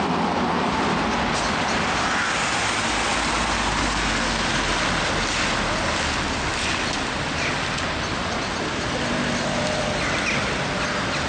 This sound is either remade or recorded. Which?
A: recorded